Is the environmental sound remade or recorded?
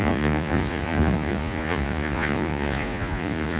remade